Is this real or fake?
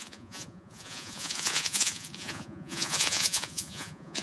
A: fake